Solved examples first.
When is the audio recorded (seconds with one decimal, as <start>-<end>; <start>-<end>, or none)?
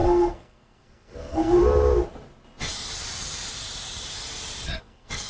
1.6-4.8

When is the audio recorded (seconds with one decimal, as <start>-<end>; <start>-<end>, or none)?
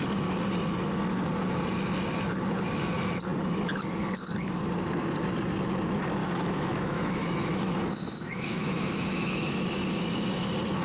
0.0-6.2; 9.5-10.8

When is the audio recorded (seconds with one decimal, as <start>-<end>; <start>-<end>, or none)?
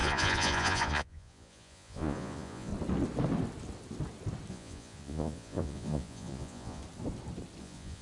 2.7-4.5; 6.8-7.6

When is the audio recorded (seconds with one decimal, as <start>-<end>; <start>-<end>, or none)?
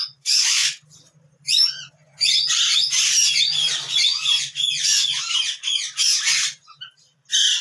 0.6-5.2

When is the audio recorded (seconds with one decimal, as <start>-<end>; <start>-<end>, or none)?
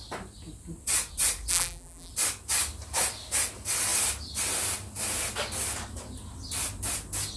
0.0-1.5; 2.1-7.4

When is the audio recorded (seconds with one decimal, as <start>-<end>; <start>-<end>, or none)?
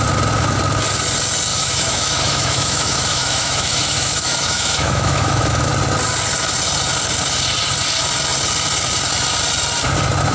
0.0-1.5; 5.7-10.3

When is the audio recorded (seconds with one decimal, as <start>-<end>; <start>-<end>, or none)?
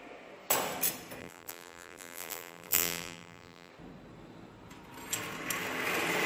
0.0-1.2; 3.7-6.3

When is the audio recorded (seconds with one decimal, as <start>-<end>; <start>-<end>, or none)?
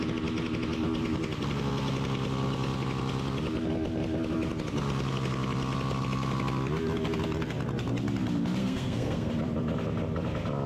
0.0-8.6; 9.3-10.7